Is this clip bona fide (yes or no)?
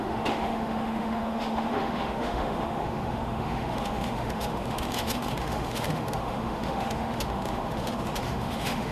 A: no